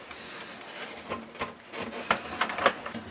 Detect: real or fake real